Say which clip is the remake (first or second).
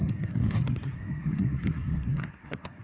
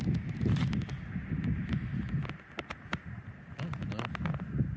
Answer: first